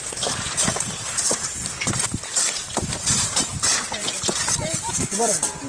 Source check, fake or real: fake